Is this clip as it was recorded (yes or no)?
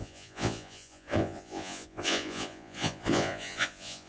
no